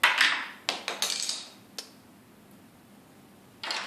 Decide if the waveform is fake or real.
real